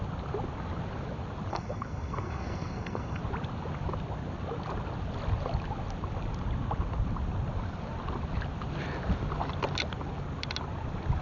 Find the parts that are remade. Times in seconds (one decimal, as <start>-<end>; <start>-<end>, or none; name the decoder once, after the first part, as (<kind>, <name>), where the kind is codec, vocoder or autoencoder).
1.5-3.2 (codec, SNAC)

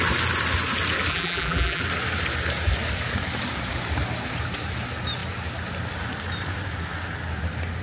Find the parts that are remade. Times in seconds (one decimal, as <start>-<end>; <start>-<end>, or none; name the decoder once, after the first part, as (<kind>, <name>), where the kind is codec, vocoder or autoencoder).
1.1-1.8 (vocoder, BigVGAN v2)

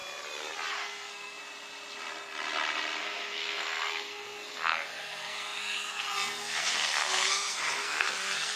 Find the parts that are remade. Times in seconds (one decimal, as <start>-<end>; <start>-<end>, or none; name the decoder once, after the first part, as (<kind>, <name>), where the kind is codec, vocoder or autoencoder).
0.7-1.4 (codec, SNAC); 3.0-8.6

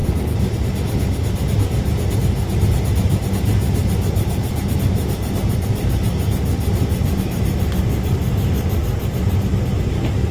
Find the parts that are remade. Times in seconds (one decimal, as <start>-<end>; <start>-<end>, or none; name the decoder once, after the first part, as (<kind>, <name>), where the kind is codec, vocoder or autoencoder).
none

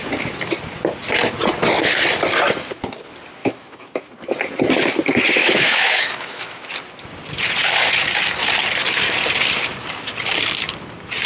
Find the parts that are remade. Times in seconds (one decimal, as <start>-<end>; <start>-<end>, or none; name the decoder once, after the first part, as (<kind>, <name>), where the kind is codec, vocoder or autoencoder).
3.4-4.1 (autoencoder, DAC-VAE); 5.4-6.7

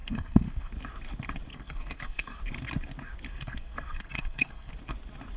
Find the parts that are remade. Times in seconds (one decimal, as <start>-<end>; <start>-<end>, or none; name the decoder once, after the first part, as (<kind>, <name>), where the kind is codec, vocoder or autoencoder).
0.0-0.7 (codec, SNAC); 1.5-2.4; 3.3-4.7

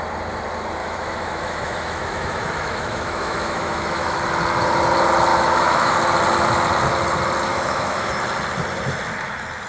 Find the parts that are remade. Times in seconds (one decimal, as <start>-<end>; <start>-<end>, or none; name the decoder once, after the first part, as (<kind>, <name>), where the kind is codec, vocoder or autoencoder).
0.8-4.2 (autoencoder, DAC-VAE); 5.3-6.0; 7.5-8.1

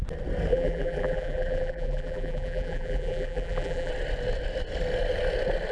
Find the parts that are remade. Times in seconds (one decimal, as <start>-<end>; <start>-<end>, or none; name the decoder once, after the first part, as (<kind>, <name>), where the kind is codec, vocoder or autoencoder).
0.5-3.9 (vocoder, BigVGAN v2)